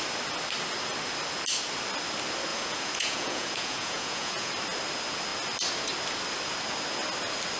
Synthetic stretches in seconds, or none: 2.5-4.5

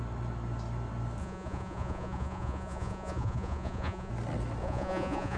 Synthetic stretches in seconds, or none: 1.2-4.1; 4.6-5.4

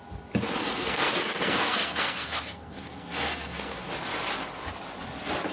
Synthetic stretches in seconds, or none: 0.6-3.9

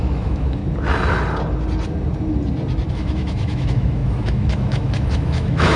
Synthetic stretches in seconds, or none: 0.0-0.6; 2.9-5.8

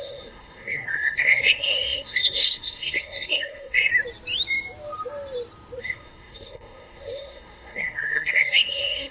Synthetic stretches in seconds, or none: 0.0-3.9; 5.8-9.1

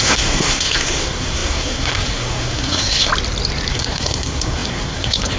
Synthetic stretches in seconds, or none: 0.0-3.1; 3.7-5.4

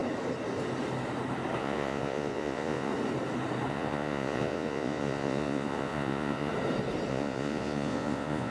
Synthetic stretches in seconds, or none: 1.6-2.9; 3.7-6.5; 7.1-8.5

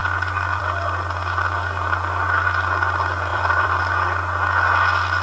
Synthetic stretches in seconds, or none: 3.3-3.8